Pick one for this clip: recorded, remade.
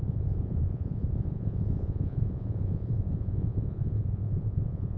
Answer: remade